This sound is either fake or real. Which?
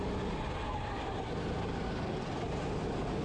real